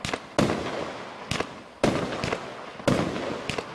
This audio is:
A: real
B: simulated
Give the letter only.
A